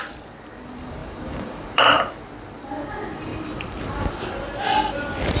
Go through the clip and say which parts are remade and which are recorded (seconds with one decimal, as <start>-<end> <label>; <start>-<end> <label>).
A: 0.0-1.0 recorded; 1.0-2.0 remade; 2.0-3.3 recorded; 3.3-4.3 remade; 4.3-5.4 recorded